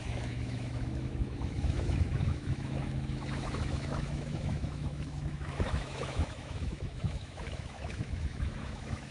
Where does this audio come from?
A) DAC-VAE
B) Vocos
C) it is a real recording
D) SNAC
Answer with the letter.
A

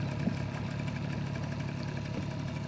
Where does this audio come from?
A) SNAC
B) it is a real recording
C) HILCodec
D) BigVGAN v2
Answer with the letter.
B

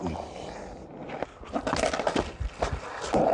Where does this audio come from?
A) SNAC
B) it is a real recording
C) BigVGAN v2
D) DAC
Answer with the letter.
B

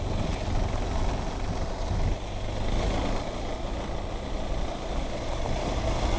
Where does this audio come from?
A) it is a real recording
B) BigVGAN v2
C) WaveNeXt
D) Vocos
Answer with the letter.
A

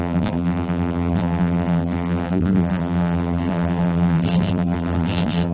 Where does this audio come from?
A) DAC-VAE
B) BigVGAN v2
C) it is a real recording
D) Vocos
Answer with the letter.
B